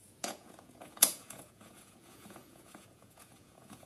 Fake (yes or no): yes